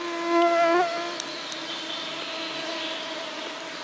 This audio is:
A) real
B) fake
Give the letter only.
A